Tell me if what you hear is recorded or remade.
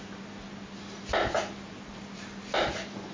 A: recorded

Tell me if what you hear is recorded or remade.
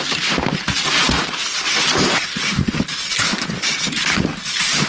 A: recorded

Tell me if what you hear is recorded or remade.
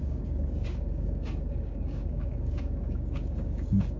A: remade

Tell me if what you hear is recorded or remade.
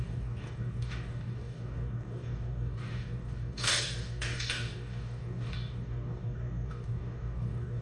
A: remade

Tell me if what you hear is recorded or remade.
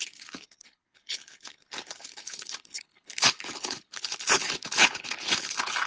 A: remade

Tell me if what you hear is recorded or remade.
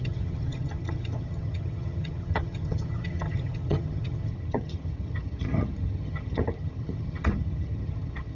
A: remade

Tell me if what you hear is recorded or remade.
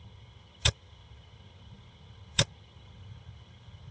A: remade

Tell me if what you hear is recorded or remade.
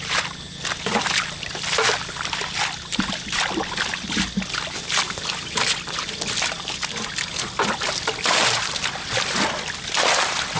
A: recorded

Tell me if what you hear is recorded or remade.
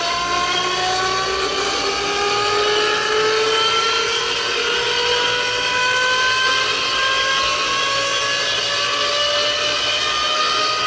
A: recorded